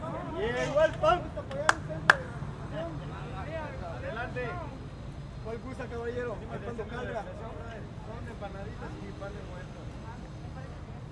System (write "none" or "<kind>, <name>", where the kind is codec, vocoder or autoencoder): none